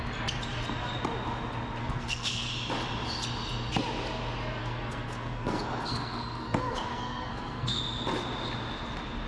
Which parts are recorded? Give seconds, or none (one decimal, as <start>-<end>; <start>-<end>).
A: 0.0-1.8; 2.5-4.6; 7.8-9.3

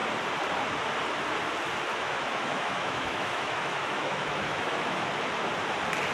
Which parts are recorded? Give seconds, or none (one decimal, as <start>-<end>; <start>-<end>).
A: 0.0-1.9; 5.1-6.1

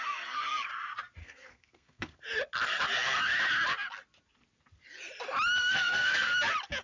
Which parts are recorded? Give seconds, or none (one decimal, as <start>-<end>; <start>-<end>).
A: 0.0-1.2; 2.2-5.6; 6.3-6.8

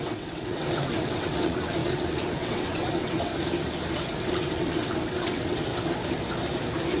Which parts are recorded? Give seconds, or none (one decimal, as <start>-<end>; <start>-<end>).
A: 3.3-4.1; 5.7-7.0

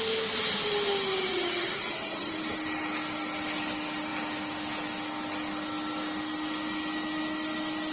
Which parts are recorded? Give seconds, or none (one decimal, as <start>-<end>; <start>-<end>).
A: 0.0-1.3; 2.3-7.9

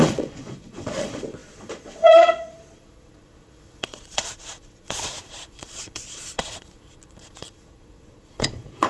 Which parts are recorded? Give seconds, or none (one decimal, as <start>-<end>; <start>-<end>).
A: none

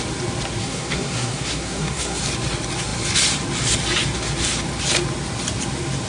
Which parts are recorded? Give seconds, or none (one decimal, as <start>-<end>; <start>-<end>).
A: 0.0-0.6; 2.2-6.1

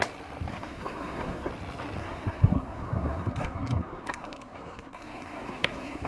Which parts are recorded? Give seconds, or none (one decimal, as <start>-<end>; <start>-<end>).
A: 0.0-0.5; 1.5-2.0